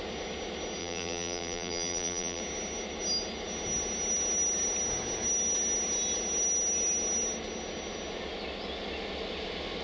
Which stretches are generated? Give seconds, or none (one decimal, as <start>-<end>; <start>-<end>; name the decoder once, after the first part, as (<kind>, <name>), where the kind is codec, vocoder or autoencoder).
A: 0.8-2.4 (vocoder, BigVGAN v2)